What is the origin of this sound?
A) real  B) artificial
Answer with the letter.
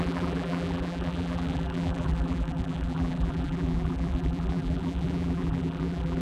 B